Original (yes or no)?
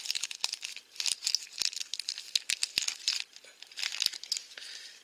yes